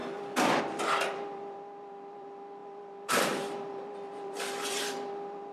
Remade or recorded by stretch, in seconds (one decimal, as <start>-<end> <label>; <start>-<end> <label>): 0.0-5.5 remade

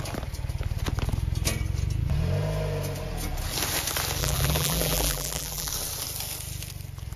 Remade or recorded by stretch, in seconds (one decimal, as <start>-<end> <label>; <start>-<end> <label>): 0.0-4.2 recorded; 4.2-5.7 remade; 5.7-7.2 recorded

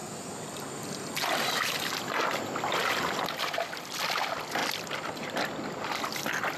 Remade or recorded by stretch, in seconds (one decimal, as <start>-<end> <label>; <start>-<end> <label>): 0.0-6.6 recorded

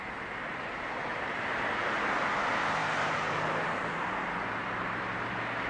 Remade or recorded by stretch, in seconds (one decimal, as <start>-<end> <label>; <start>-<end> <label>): 0.0-1.1 recorded; 1.1-1.6 remade; 1.6-2.8 recorded; 2.8-4.1 remade; 4.1-5.7 recorded

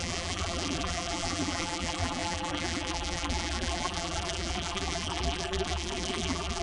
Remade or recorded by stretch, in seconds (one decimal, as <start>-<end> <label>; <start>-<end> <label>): 0.0-6.6 remade

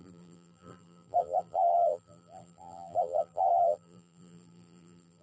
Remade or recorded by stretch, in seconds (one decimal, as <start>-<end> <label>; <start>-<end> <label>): 0.0-5.2 remade